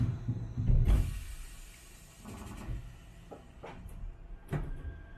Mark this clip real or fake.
real